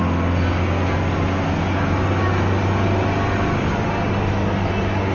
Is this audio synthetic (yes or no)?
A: no